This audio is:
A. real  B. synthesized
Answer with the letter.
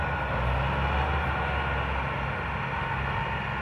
A